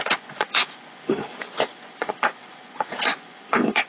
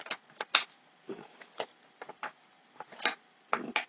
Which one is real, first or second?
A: second